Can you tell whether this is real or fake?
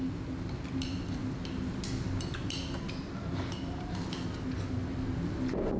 real